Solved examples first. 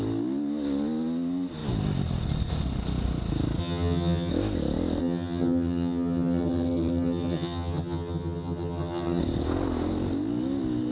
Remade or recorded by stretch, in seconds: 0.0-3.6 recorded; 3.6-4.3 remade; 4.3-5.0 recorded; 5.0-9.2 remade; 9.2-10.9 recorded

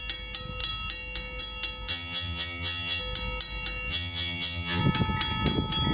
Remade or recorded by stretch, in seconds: 0.0-1.9 recorded; 1.9-3.0 remade; 3.0-3.9 recorded; 3.9-4.8 remade; 4.8-5.9 recorded

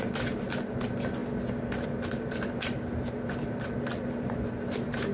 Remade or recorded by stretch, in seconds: 0.0-5.1 recorded

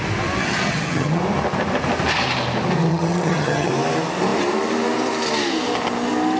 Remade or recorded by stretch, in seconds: 0.0-0.4 recorded; 0.4-1.2 remade; 1.2-2.9 recorded; 2.9-3.7 remade; 3.7-6.4 recorded